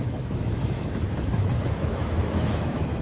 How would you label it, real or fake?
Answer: fake